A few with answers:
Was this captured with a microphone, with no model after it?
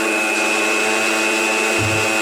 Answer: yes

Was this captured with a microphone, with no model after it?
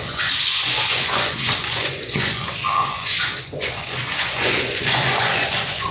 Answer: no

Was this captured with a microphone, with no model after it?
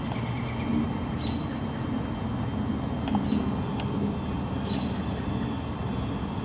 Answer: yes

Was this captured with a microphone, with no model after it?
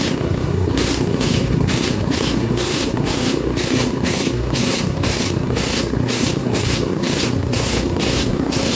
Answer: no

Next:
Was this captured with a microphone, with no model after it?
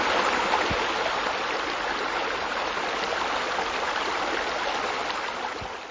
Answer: yes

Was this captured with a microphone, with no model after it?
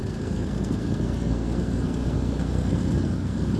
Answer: no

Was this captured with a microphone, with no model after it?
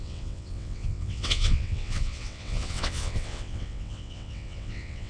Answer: no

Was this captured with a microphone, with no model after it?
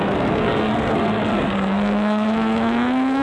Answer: no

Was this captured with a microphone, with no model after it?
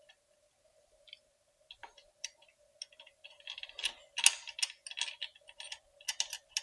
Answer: yes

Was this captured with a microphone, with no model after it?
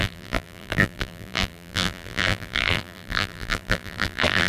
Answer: no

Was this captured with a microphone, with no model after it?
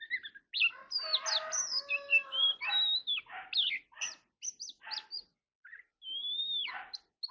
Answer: yes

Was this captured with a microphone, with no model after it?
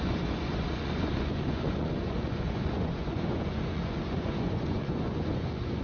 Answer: no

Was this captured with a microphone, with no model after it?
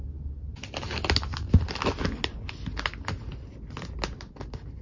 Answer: yes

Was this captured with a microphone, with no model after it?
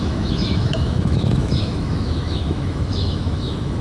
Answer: no